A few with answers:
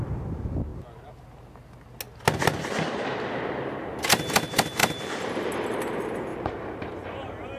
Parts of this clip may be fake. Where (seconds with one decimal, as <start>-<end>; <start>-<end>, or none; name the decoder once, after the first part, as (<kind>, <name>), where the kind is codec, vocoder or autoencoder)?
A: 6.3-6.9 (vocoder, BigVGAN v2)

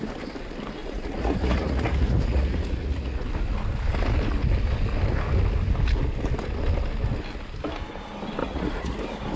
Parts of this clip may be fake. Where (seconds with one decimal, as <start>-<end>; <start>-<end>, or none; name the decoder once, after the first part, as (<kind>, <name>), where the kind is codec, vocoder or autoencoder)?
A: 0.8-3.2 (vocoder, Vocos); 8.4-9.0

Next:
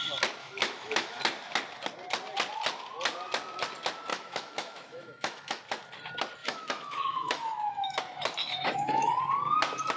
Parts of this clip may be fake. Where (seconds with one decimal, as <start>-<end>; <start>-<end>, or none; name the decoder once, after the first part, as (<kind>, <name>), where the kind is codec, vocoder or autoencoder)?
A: 0.4-1.2 (autoencoder, DAC-VAE); 4.1-5.6; 6.4-8.0; 8.4-9.2

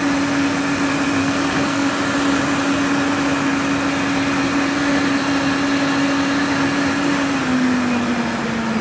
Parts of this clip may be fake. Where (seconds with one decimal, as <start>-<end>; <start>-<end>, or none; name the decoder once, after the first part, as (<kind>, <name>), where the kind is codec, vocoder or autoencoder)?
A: 1.2-1.9 (codec, SNAC)

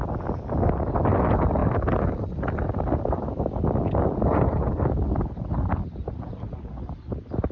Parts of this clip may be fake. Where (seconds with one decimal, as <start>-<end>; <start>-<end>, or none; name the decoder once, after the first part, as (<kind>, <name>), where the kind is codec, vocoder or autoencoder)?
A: none